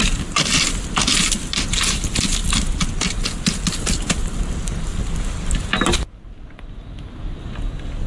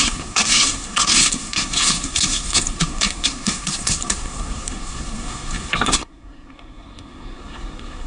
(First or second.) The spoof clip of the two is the second